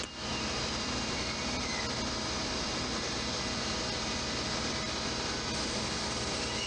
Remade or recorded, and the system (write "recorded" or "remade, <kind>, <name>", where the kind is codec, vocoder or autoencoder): recorded